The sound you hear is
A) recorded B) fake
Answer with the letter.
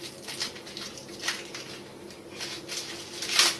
A